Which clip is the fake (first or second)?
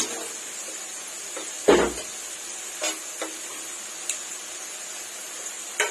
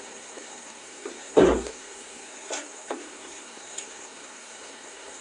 second